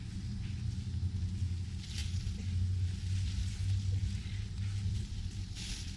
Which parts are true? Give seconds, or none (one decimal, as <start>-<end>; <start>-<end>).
0.0-6.0